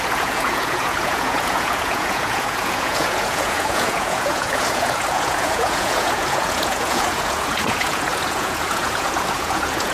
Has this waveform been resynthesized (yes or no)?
yes